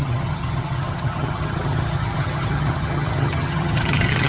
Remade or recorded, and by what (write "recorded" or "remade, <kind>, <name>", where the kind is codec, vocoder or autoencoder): remade, vocoder, HiFi-GAN